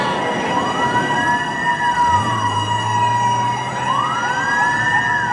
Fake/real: real